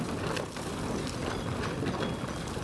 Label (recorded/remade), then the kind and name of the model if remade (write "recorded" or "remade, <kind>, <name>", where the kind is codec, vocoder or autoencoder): recorded